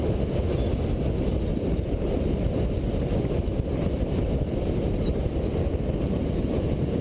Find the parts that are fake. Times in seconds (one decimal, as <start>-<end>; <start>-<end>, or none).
1.5-2.5